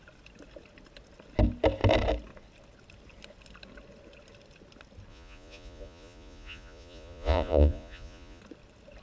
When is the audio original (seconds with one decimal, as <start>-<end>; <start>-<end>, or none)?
0.0-5.1; 8.4-9.0